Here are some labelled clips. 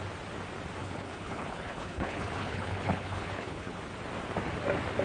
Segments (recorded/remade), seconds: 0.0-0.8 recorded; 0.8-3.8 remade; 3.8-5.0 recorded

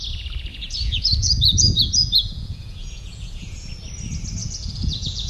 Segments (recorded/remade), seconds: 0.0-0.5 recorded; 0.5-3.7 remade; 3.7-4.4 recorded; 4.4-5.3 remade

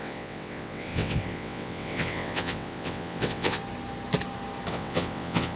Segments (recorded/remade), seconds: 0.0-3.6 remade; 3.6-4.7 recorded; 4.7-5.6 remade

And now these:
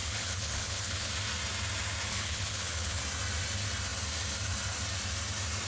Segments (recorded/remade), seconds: 0.0-1.1 remade; 1.1-2.1 recorded; 2.1-3.0 remade; 3.0-5.7 recorded

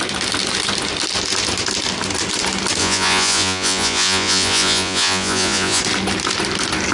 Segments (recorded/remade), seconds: 0.0-2.8 recorded; 2.8-5.8 remade; 5.8-6.9 recorded

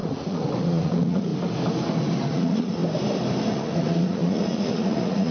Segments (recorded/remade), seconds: 0.0-1.3 remade; 1.3-2.3 recorded; 2.3-2.8 remade; 2.8-3.5 recorded; 3.5-5.3 remade

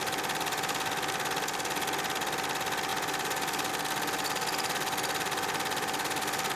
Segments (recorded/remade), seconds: 0.0-6.6 recorded

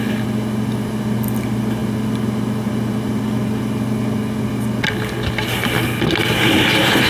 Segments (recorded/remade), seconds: 0.0-7.1 recorded